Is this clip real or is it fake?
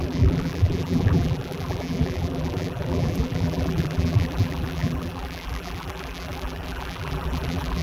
fake